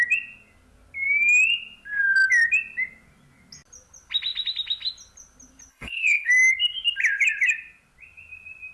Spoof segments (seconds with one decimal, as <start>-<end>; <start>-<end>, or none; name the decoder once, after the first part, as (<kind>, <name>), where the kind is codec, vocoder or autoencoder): 5.7-6.3 (codec, HILCodec)